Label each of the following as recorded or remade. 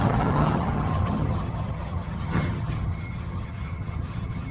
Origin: remade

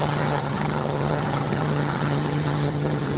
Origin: remade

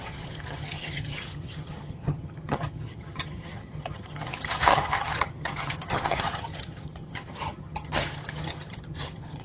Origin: remade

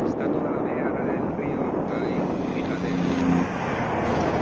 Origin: recorded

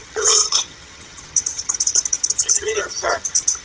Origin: remade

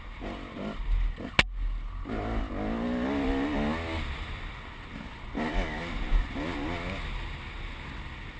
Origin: recorded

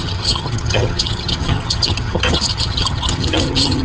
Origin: remade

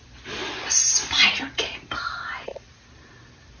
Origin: recorded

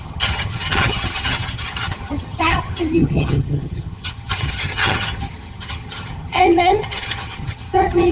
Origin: remade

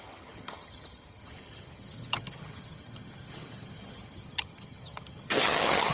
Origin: remade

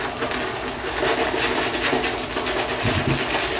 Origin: recorded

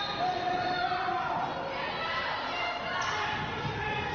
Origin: recorded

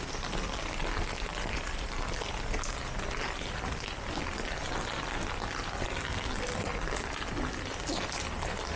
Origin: recorded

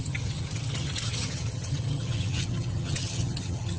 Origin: remade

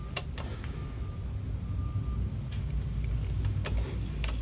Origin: recorded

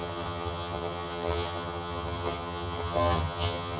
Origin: remade